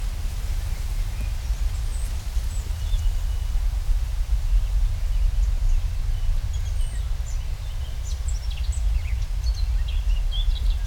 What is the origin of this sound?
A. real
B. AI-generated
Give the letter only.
A